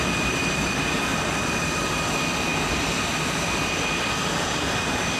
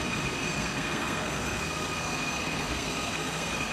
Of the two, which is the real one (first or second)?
first